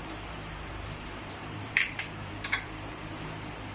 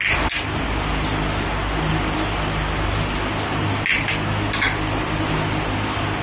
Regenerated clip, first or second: first